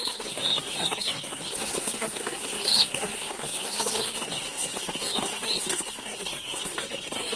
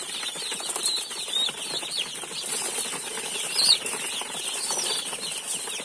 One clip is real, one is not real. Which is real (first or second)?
second